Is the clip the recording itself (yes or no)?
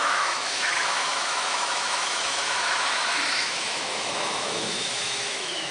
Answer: no